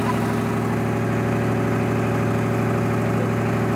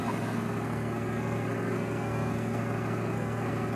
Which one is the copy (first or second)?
second